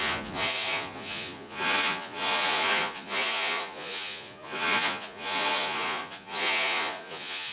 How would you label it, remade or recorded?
remade